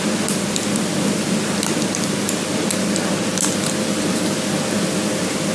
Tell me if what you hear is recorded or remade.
recorded